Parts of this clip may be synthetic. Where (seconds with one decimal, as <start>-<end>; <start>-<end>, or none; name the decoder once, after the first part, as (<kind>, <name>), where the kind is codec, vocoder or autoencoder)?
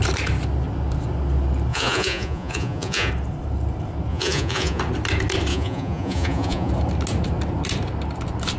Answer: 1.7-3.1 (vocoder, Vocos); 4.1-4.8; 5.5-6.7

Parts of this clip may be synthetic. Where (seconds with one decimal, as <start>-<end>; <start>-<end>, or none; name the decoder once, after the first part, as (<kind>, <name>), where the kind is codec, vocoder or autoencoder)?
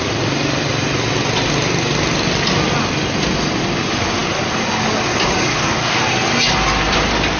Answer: 5.5-6.0 (codec, DAC)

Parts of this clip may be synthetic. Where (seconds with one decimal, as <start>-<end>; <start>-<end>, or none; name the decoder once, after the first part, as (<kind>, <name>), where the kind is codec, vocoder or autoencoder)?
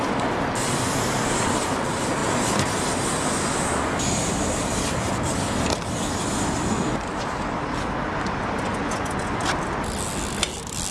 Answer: 8.7-9.4 (vocoder, Vocos)